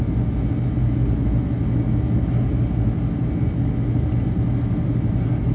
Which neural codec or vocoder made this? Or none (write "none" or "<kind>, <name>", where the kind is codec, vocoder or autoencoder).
none